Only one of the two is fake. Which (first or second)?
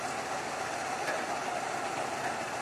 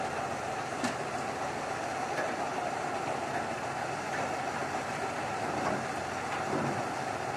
second